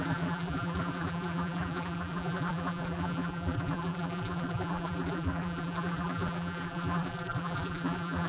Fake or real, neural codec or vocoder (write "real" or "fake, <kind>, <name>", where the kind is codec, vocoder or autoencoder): fake, vocoder, BigVGAN v2